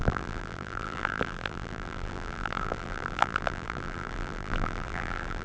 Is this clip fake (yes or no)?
yes